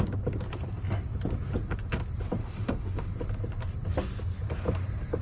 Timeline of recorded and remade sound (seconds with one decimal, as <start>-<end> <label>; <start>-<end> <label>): 0.0-2.4 recorded; 2.4-3.1 remade; 3.1-5.2 recorded